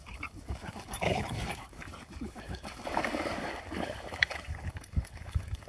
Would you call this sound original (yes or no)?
no